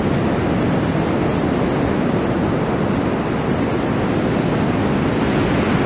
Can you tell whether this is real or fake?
real